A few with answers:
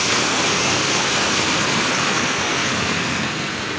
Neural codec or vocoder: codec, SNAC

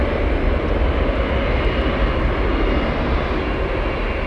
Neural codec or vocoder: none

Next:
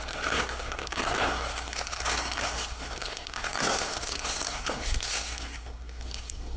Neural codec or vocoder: codec, SNAC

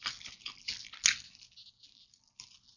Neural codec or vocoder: none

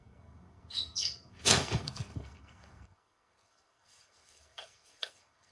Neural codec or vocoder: codec, SNAC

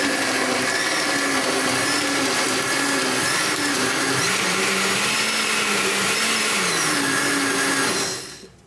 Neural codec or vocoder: none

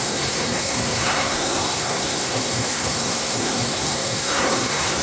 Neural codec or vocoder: codec, SNAC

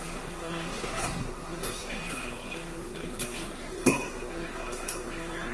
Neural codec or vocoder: codec, SNAC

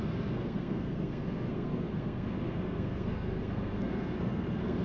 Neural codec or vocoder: codec, SNAC